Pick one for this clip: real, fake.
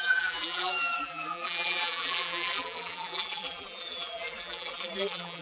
fake